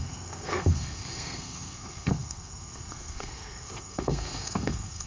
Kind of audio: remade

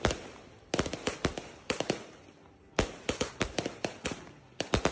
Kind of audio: recorded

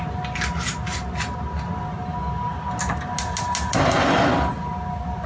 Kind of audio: recorded